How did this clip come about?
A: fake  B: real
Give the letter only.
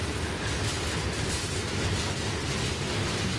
B